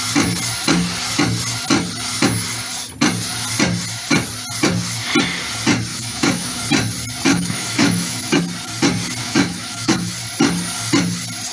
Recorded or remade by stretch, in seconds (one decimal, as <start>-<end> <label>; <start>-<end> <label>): 0.0-5.9 recorded; 5.9-6.6 remade; 6.6-7.3 recorded; 7.3-8.4 remade; 8.4-9.2 recorded; 9.2-10.1 remade; 10.1-11.5 recorded